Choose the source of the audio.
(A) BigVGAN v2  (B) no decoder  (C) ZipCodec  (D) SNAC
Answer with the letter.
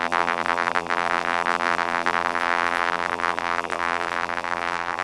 A